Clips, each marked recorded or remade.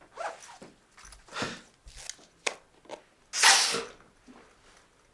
recorded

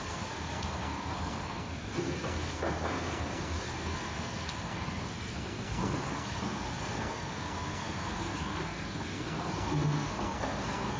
remade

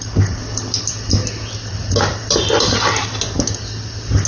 recorded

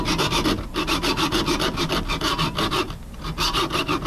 recorded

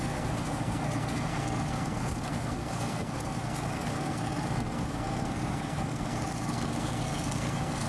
remade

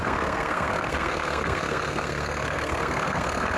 remade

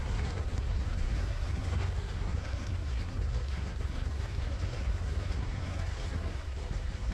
remade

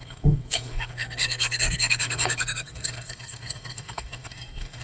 remade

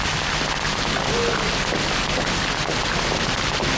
recorded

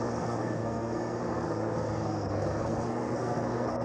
remade